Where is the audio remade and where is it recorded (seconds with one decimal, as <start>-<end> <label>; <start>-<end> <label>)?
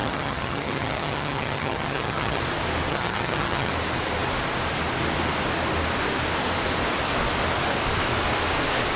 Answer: 0.0-2.4 remade; 2.4-2.9 recorded; 2.9-3.7 remade; 3.7-9.0 recorded